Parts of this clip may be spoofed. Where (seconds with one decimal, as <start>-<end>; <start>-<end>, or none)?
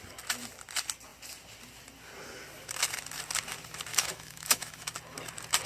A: 3.9-4.9